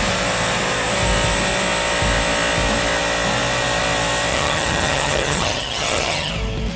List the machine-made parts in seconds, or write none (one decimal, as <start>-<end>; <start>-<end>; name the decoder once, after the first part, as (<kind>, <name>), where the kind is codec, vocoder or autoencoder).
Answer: 4.3-6.3 (vocoder, HiFi-GAN)